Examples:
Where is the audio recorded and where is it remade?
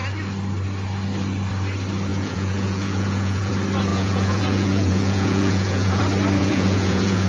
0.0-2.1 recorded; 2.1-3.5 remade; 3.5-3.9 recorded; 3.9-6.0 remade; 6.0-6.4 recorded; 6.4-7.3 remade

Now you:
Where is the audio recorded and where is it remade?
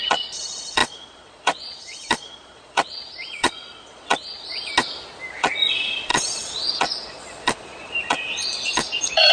0.0-4.7 remade; 4.7-5.3 recorded; 5.3-9.3 remade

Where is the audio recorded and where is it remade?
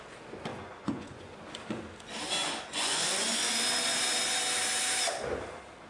0.0-0.5 recorded; 0.5-1.4 remade; 1.4-2.4 recorded; 2.4-3.5 remade; 3.5-5.9 recorded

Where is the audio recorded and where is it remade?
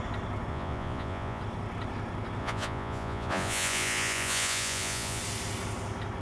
0.0-0.5 recorded; 0.5-1.4 remade; 1.4-2.4 recorded; 2.4-5.2 remade; 5.2-6.2 recorded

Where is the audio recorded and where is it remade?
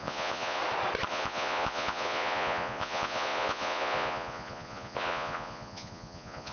0.0-0.6 remade; 0.6-1.1 recorded; 1.1-6.5 remade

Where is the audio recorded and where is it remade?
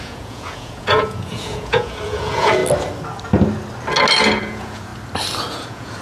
0.0-2.6 remade; 2.6-4.4 recorded; 4.4-4.9 remade; 4.9-5.5 recorded; 5.5-6.0 remade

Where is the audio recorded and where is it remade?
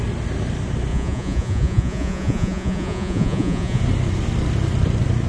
0.0-0.9 recorded; 0.9-3.8 remade; 3.8-5.3 recorded